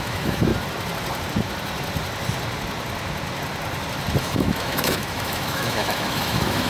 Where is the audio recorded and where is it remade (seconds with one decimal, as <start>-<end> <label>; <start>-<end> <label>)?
0.0-0.5 remade; 0.5-4.2 recorded; 4.2-6.7 remade